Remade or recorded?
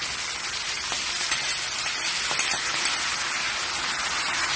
recorded